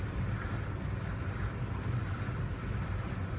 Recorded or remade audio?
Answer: recorded